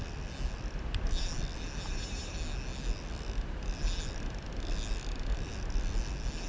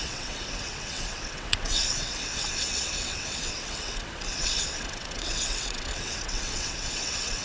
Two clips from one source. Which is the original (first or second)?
first